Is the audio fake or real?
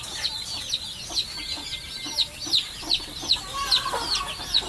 real